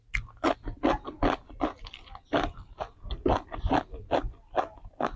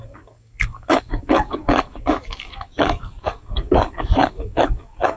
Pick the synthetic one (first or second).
second